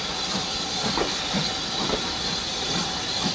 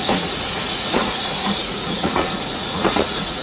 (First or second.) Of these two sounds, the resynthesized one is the second